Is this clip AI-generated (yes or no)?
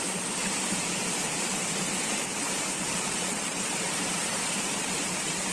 yes